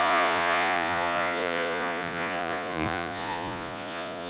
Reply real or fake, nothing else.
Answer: fake